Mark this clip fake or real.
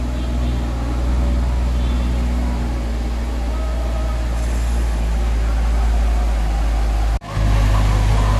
real